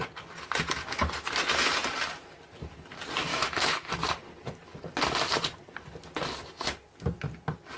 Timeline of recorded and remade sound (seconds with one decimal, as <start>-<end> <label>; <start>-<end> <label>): 0.0-3.3 recorded; 3.3-3.9 remade; 3.9-7.8 recorded